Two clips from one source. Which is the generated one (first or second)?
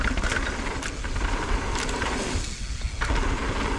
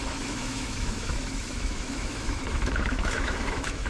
second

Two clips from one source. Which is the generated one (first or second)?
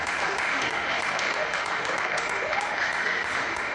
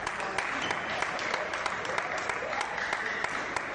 first